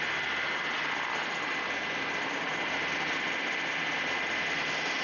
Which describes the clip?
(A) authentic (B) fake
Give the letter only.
A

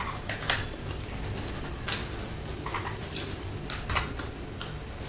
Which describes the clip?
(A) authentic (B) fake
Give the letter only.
A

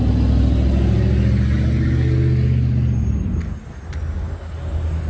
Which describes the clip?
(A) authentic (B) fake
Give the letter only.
A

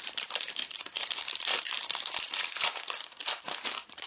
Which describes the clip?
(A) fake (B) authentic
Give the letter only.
A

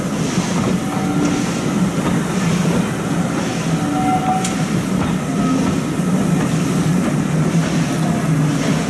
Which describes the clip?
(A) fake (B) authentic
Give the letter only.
B